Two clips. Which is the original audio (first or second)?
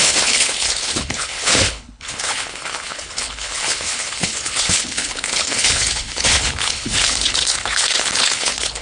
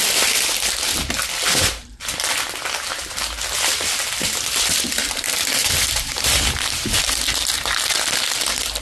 second